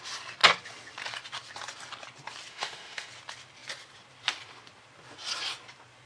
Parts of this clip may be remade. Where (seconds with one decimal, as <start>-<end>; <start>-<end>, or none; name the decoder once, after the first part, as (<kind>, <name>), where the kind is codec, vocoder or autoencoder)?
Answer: 2.5-3.1 (autoencoder, DAC-VAE)